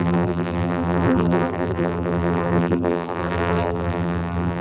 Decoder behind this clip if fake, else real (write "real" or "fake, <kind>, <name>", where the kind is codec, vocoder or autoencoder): fake, vocoder, BigVGAN v2